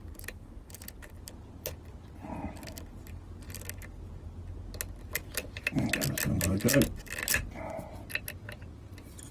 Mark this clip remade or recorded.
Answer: recorded